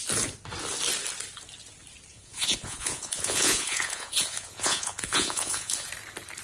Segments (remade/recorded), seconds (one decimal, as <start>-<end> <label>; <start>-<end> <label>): 0.0-2.1 recorded; 2.1-5.9 remade; 5.9-6.4 recorded